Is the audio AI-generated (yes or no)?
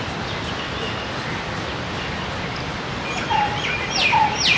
no